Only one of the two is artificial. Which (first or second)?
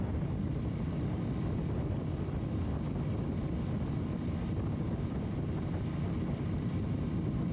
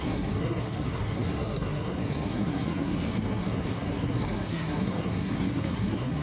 second